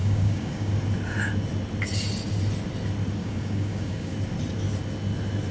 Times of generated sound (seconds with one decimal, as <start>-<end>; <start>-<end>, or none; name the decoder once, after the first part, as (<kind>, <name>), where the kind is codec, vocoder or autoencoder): 0.0-0.7 (codec, DAC); 3.2-4.1